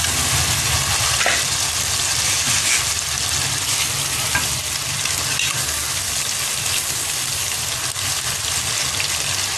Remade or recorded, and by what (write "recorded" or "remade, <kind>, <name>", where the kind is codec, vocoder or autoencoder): recorded